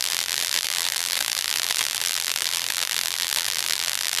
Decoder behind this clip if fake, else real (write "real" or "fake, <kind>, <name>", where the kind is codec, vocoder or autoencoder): fake, vocoder, BigVGAN v2